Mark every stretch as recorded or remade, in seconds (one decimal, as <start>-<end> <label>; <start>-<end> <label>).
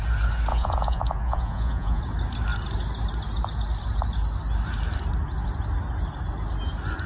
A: 0.0-0.5 recorded; 0.5-2.0 remade; 2.0-7.1 recorded